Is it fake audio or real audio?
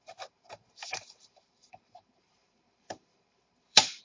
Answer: fake